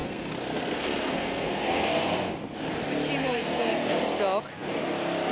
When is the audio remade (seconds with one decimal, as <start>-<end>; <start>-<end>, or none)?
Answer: 0.0-2.3; 3.2-4.0